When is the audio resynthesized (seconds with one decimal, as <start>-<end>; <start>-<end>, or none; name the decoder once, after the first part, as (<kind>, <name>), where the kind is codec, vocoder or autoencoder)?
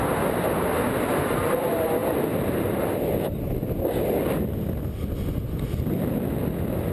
none